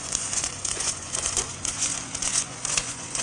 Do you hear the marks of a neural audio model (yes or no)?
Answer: yes